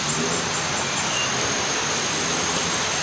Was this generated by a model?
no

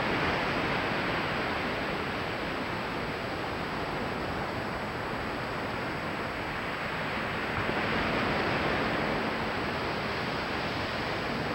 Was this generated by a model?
no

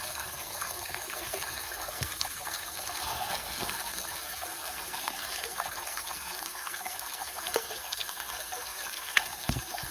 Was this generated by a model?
yes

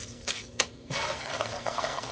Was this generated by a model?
yes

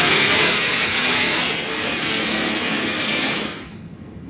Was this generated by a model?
yes